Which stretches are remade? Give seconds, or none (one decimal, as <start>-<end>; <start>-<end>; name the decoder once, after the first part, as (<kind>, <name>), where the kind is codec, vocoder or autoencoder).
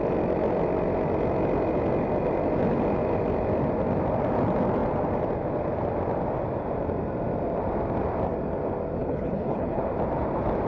9.0-9.8 (codec, HILCodec)